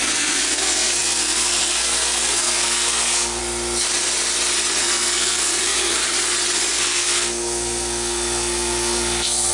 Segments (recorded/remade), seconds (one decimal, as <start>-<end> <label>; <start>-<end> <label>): 0.0-3.4 remade; 3.4-4.8 recorded; 4.8-5.9 remade; 5.9-6.7 recorded; 6.7-9.5 remade